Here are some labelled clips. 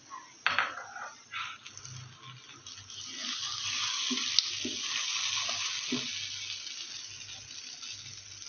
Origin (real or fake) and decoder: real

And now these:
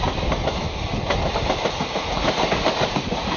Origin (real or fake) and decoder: real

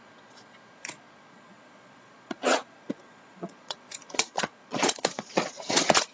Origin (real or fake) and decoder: fake, vocoder, Vocos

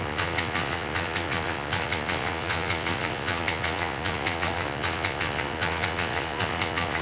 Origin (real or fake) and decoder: fake, vocoder, Vocos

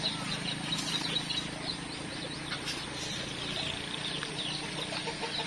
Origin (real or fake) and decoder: real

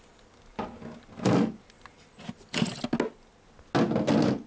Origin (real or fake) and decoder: real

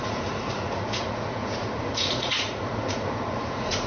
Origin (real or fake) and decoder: fake, vocoder, Vocos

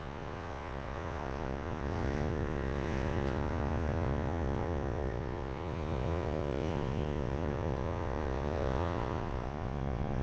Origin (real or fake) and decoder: fake, vocoder, Vocos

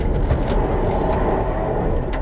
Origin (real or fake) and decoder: real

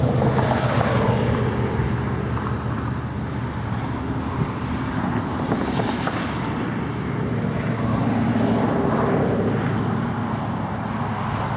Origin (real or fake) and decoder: real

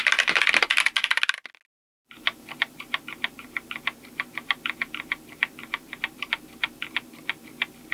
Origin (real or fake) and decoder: real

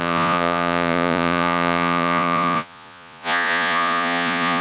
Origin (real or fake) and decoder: fake, vocoder, Vocos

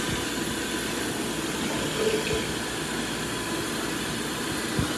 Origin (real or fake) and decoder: real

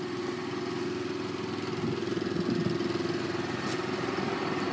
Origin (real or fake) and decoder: real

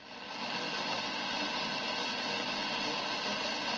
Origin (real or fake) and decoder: real